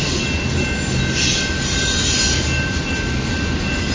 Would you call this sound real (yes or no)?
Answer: yes